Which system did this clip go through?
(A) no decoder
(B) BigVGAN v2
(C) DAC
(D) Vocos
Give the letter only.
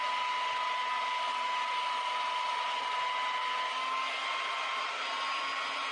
A